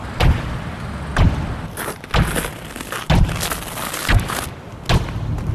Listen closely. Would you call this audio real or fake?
real